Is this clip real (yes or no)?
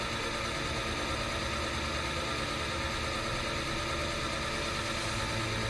yes